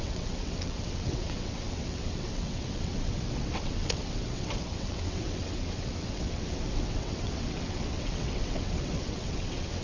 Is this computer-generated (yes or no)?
yes